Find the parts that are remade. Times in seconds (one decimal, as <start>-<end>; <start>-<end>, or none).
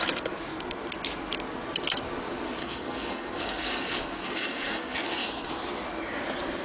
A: 2.6-5.5